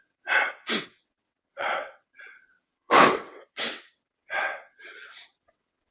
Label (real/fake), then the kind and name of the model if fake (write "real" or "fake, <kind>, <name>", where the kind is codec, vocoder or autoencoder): fake, vocoder, WaveNeXt